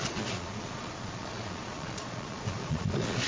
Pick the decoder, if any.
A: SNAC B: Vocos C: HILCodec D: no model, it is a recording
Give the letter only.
B